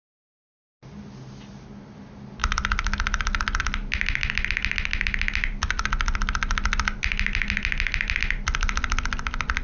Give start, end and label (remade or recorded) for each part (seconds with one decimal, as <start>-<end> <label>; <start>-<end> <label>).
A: 0.0-9.6 recorded

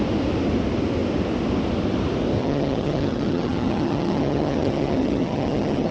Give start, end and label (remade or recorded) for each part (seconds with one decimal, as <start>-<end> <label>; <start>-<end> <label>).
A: 0.0-2.4 recorded; 2.4-5.9 remade